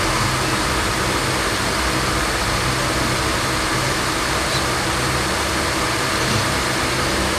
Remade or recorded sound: recorded